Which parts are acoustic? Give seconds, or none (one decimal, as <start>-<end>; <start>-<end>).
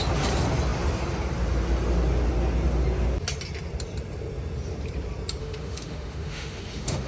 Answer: 0.0-5.4